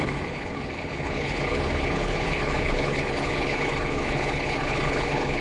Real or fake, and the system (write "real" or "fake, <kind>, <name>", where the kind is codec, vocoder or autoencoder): fake, codec, HILCodec